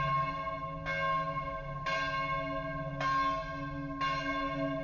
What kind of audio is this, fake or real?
real